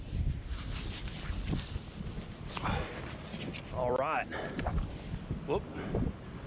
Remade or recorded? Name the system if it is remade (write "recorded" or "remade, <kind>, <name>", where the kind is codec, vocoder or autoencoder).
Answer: recorded